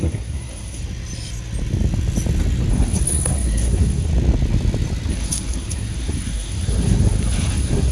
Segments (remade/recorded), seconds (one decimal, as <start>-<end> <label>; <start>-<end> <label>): 0.0-0.8 remade; 0.8-2.7 recorded; 2.7-4.1 remade; 4.1-5.1 recorded; 5.1-7.9 remade